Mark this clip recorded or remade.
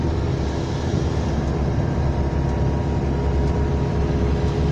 recorded